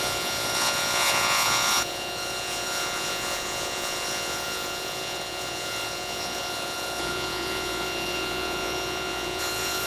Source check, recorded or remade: remade